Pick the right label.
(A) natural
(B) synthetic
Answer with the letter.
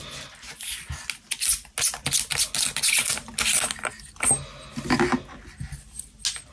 A